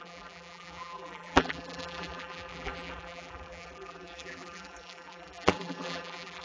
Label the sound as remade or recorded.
remade